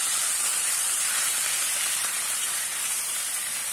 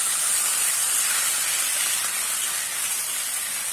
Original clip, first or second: second